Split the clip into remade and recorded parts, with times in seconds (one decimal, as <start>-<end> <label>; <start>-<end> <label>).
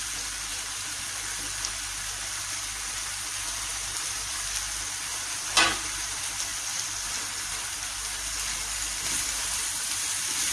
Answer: 0.0-0.5 recorded; 0.5-1.0 remade; 1.0-5.1 recorded; 5.1-6.2 remade; 6.2-10.5 recorded